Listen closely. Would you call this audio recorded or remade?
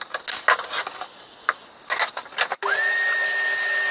recorded